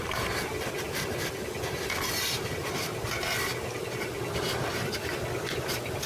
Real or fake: real